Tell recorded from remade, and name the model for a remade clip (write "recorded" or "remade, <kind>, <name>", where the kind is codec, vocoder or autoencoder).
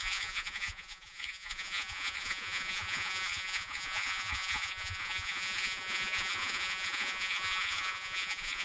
remade, vocoder, Vocos